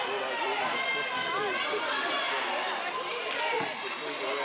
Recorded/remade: recorded